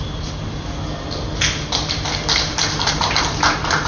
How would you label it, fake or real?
real